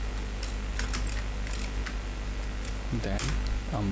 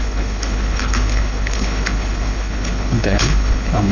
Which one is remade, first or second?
second